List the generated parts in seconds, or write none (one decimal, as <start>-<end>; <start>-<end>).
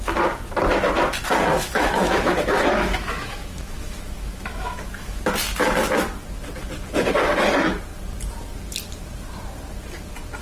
1.5-5.2